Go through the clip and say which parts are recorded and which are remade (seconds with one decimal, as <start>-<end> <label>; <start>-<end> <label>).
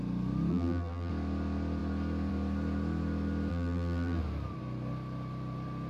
0.0-0.5 recorded; 0.5-1.1 remade; 1.1-3.5 recorded; 3.5-4.2 remade; 4.2-5.9 recorded